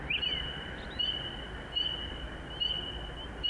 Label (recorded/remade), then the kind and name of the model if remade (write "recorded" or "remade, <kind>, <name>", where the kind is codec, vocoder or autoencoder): recorded